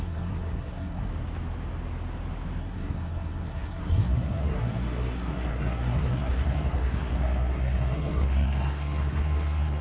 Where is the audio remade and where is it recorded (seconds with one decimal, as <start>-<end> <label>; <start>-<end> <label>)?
0.0-1.1 remade; 1.1-2.6 recorded; 2.6-9.8 remade